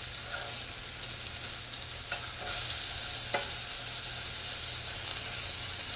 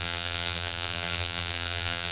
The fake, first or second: second